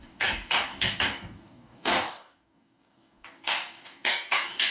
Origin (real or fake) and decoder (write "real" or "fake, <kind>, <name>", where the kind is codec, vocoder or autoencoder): fake, codec, DAC